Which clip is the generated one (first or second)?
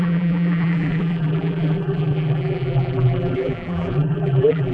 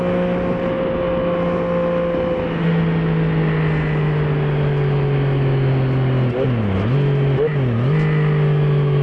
first